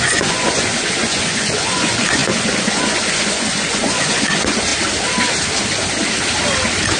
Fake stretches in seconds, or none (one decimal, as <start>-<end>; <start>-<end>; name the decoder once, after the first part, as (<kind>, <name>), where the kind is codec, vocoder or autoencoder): 0.0-4.7 (vocoder, Vocos)